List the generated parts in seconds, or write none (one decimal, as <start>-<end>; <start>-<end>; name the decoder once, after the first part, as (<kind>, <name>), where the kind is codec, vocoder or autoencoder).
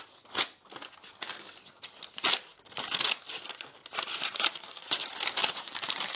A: 5.4-6.2 (vocoder, BigVGAN v2)